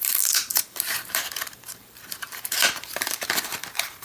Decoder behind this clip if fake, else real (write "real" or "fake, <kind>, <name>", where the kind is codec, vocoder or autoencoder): fake, vocoder, BigVGAN v2